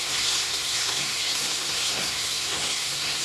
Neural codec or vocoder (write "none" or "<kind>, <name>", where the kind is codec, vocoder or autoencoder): codec, SNAC